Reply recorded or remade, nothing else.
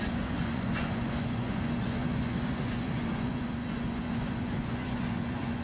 remade